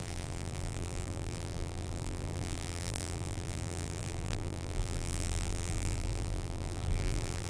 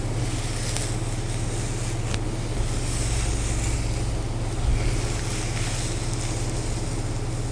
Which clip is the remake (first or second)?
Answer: first